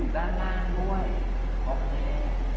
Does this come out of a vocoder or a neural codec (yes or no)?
no